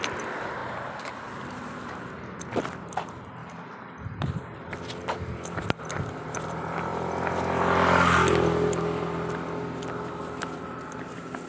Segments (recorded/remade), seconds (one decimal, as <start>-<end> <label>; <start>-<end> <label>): 0.0-0.6 recorded; 0.6-2.1 remade; 2.1-3.4 recorded; 3.4-6.3 remade; 6.3-11.5 recorded